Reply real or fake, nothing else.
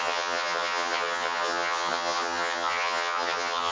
fake